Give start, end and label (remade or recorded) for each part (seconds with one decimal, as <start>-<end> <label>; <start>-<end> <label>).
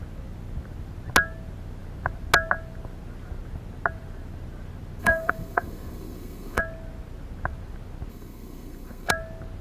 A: 0.0-5.0 recorded; 5.0-6.6 remade; 6.6-8.1 recorded; 8.1-9.1 remade; 9.1-9.6 recorded